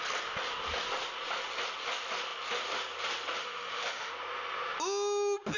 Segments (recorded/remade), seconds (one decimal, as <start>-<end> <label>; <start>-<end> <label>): 0.0-3.4 recorded; 3.4-4.1 remade; 4.1-5.6 recorded